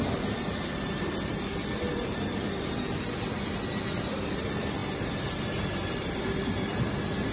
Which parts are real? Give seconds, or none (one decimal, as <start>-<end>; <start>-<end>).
none